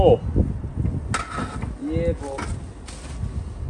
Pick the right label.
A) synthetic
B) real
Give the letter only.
B